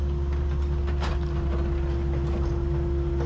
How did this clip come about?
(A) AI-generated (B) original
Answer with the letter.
B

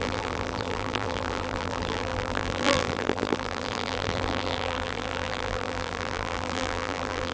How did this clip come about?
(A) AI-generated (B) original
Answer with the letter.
A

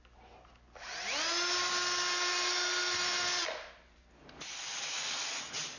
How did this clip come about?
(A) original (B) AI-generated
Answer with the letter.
A